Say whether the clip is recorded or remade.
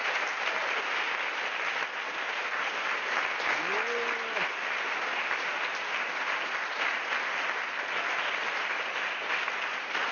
recorded